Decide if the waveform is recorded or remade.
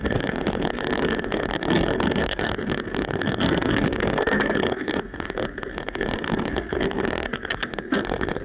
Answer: remade